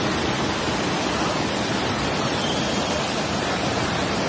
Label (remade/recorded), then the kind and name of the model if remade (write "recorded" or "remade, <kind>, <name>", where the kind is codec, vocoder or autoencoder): recorded